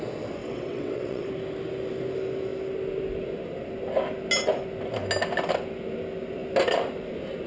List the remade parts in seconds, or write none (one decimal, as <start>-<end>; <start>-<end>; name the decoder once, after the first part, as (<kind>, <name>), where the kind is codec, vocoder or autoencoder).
0.4-1.3 (vocoder, WaveNeXt)